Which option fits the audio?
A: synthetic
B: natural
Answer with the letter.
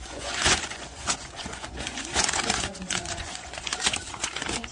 A